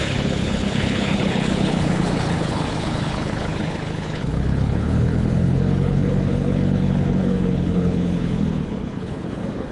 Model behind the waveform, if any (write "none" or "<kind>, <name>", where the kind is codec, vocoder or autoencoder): codec, HILCodec